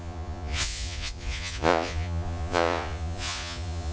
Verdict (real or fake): fake